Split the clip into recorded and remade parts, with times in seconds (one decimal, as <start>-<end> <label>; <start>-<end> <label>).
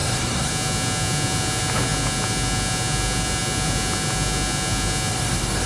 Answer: 0.0-0.5 remade; 0.5-5.1 recorded; 5.1-5.7 remade